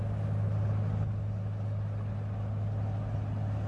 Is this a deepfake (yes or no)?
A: no